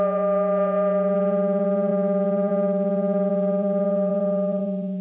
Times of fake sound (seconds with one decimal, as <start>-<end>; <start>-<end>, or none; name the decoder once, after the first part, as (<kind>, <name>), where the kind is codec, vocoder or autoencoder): 0.0-5.0 (vocoder, Vocos)